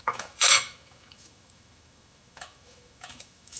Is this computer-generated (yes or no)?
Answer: yes